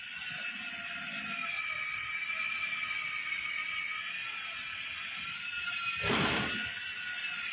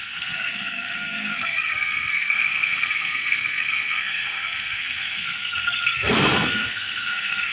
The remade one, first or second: second